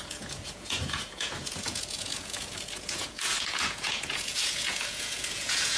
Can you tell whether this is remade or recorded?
remade